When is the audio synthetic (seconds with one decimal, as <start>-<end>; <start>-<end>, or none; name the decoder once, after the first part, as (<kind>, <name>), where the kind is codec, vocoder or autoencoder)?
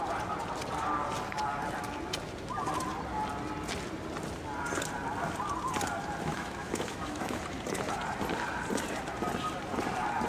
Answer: 6.3-7.4 (autoencoder, DAC-VAE)